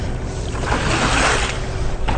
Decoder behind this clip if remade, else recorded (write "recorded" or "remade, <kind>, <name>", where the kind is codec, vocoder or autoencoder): recorded